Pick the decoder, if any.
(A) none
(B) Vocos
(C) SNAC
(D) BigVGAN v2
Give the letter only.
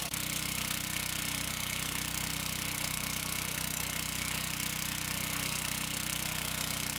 C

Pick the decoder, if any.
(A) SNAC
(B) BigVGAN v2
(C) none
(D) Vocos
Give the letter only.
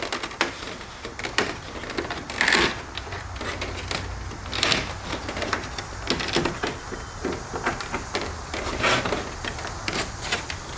C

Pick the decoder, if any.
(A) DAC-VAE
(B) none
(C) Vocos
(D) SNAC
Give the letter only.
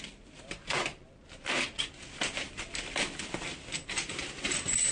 B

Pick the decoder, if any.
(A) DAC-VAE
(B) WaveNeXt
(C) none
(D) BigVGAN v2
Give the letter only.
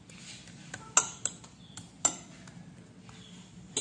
C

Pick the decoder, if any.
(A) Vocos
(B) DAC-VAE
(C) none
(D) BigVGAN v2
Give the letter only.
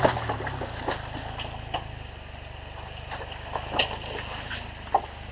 C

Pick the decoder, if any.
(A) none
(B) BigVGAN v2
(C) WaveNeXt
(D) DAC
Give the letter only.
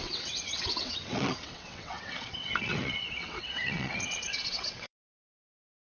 C